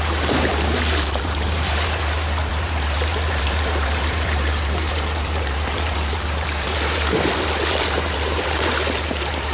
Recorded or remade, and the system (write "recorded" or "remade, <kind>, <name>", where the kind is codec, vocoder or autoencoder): remade, vocoder, BigVGAN v2